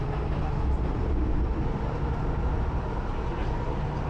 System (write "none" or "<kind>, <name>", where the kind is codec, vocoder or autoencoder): none